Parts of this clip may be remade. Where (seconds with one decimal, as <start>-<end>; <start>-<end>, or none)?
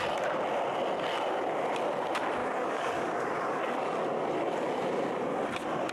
2.4-3.6